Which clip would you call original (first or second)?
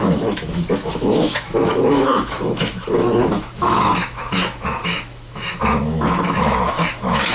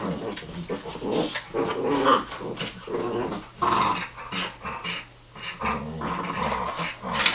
second